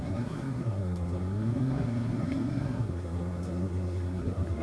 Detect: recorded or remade remade